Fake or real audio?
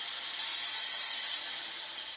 real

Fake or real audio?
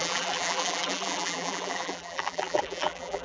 fake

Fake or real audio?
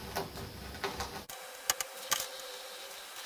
real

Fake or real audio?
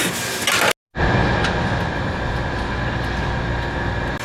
real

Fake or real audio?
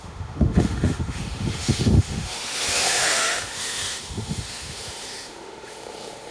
fake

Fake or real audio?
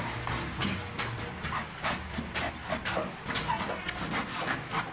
real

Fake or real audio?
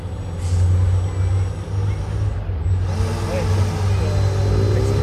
real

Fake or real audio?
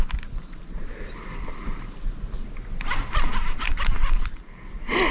fake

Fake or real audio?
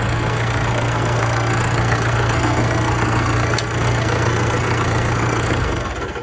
fake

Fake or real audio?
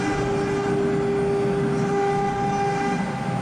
real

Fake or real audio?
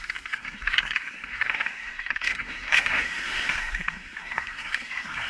fake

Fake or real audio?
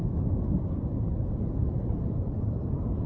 real